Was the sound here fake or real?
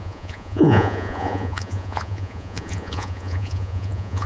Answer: fake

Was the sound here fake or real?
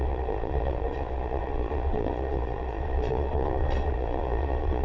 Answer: fake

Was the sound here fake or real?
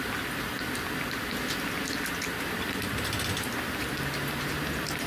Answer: real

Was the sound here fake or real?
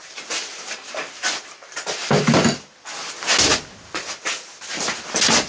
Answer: real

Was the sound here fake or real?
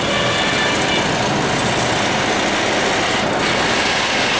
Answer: real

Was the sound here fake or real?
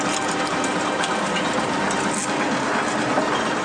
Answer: real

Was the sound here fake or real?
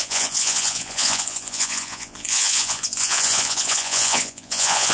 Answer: fake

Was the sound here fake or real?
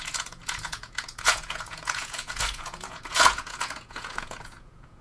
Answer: fake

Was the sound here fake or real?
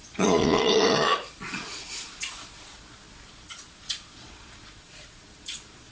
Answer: fake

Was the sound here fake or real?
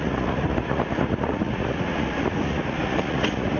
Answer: fake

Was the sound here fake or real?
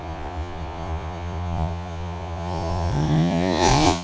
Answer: fake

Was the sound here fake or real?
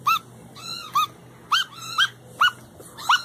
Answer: real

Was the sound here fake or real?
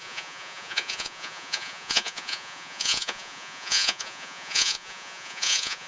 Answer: fake